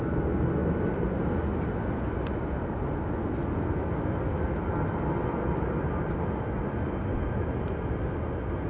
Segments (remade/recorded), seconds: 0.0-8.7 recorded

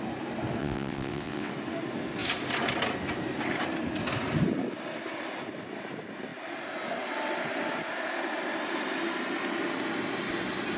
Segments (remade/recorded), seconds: 0.0-0.6 recorded; 0.6-1.5 remade; 1.5-10.8 recorded